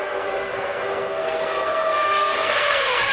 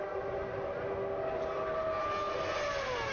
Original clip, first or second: second